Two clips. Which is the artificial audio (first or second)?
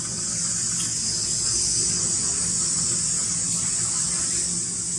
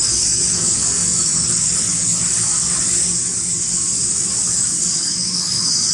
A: second